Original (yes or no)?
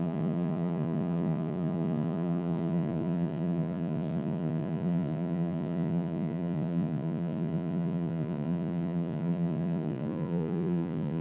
no